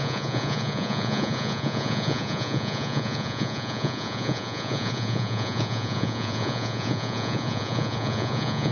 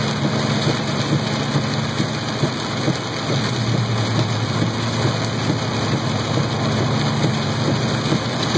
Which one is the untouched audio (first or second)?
second